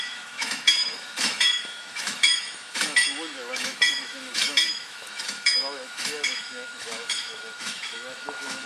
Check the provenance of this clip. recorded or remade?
remade